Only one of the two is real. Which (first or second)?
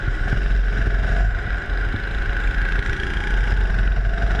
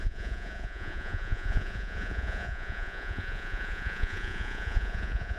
first